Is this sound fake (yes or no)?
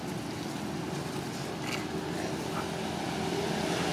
no